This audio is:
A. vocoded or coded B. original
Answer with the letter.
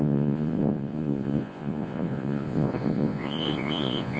A